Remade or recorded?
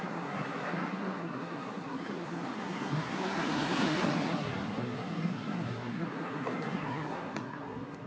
remade